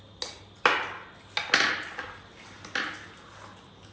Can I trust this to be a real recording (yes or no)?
yes